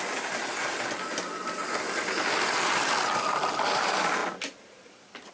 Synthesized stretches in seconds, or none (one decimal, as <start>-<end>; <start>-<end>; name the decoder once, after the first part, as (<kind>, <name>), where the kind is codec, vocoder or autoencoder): none

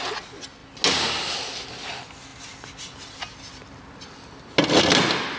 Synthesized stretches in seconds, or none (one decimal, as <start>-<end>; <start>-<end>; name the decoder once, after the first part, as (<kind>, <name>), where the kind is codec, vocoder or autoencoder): none

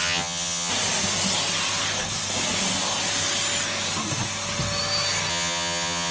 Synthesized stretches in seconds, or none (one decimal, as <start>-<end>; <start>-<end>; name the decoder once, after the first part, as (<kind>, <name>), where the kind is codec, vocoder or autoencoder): 0.0-0.7 (vocoder, HiFi-GAN); 5.3-6.1

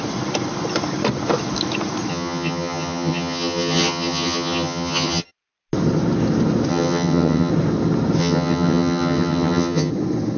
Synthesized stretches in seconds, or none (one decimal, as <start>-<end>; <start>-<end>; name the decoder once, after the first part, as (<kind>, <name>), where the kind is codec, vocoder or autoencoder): 2.1-5.3 (vocoder, HiFi-GAN); 6.7-7.5; 8.2-9.9

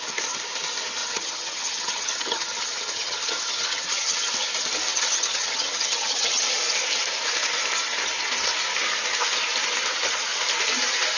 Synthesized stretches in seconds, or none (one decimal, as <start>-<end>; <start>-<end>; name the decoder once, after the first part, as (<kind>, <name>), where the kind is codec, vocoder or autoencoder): 1.0-4.3 (vocoder, HiFi-GAN); 4.9-6.4